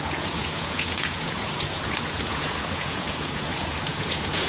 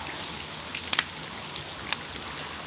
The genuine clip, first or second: second